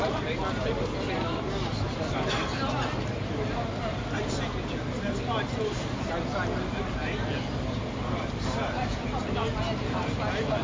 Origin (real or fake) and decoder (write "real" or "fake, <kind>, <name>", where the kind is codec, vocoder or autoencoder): real